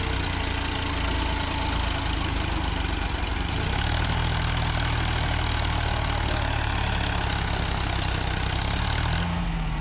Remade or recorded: recorded